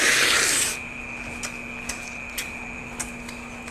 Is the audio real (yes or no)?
yes